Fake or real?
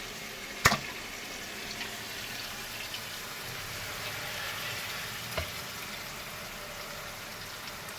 real